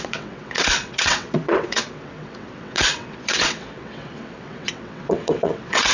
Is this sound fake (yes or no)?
yes